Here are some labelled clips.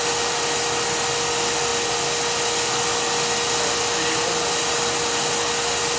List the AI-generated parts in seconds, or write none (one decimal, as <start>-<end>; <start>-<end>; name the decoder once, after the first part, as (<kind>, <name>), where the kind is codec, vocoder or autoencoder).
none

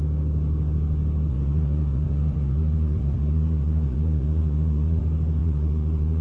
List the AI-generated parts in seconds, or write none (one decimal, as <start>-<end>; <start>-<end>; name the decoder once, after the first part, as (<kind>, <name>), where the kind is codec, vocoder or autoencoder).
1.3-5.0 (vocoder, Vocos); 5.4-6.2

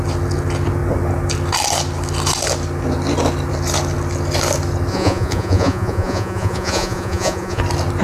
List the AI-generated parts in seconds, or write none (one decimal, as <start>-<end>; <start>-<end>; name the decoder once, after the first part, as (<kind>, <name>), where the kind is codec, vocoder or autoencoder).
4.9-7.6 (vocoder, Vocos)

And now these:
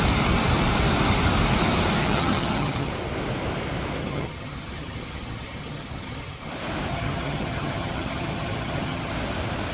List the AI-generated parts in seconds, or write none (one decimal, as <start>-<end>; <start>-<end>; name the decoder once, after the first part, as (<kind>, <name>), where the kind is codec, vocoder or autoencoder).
2.0-2.9 (vocoder, HiFi-GAN); 4.0-6.5; 6.9-9.1

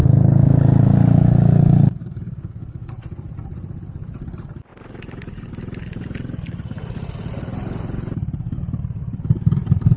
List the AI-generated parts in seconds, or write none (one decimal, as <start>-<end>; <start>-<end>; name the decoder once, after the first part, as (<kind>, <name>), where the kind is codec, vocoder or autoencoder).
0.0-2.9 (codec, DAC)

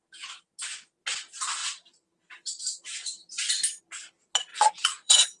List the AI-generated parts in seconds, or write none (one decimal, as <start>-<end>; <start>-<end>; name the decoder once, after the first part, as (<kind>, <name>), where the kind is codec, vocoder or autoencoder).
1.6-3.8 (vocoder, BigVGAN v2); 4.5-5.4